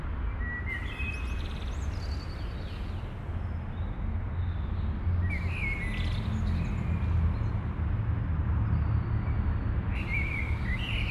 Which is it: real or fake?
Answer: real